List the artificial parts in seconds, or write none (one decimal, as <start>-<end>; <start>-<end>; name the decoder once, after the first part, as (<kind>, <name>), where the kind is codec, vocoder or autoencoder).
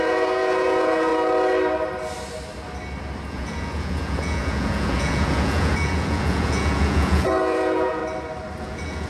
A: 0.0-1.1 (vocoder, Vocos); 3.3-8.0; 8.6-9.1